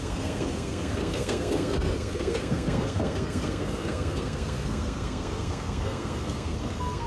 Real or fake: fake